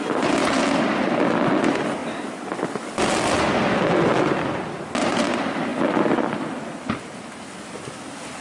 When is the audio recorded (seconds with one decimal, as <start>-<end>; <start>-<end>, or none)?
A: 0.0-8.4